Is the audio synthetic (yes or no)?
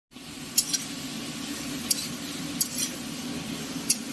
no